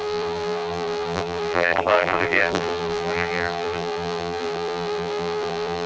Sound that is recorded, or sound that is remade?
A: remade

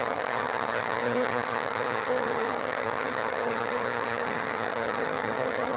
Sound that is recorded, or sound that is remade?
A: remade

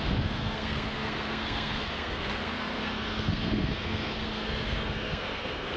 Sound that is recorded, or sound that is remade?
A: remade